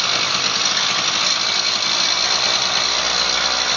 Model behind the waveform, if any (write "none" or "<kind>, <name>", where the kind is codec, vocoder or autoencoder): none